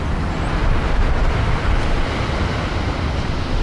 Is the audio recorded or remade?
recorded